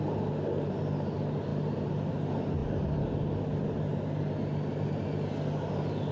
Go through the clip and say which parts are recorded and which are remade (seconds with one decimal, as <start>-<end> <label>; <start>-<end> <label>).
0.0-1.5 recorded; 1.5-2.1 remade; 2.1-6.1 recorded